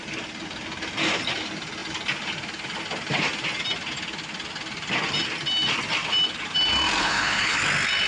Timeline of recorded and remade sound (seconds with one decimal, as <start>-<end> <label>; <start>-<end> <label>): 0.0-7.0 recorded; 7.0-7.6 remade; 7.6-8.1 recorded